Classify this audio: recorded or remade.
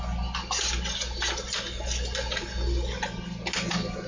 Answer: recorded